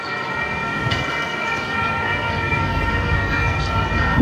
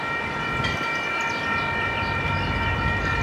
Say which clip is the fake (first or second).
first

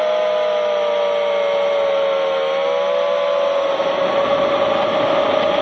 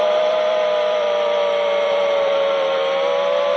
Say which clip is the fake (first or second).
second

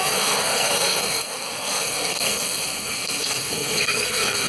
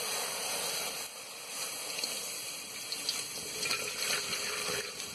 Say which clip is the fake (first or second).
first